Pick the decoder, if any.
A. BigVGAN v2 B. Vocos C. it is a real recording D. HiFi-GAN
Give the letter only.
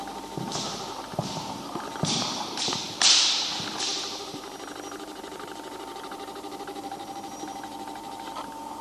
A